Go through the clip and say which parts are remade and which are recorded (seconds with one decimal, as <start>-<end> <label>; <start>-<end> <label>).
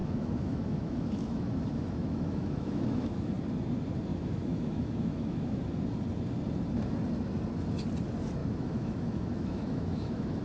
0.0-3.3 remade; 3.3-4.1 recorded; 4.1-5.6 remade; 5.6-8.4 recorded; 8.4-10.4 remade